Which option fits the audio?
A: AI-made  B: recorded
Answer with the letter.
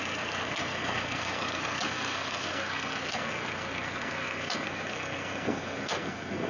A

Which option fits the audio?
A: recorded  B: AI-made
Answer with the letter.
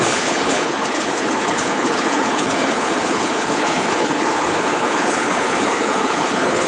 B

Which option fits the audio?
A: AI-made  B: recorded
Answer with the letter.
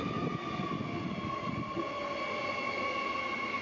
B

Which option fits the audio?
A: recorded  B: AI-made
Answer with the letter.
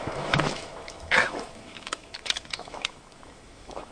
B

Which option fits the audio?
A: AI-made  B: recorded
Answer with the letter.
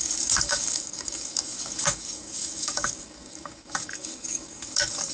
A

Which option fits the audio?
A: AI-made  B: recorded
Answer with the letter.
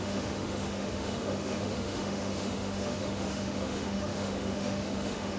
A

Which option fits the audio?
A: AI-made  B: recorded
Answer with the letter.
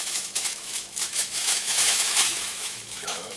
A